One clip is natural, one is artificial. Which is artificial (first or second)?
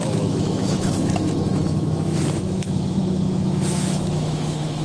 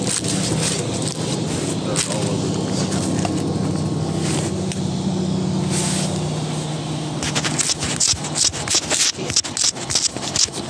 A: first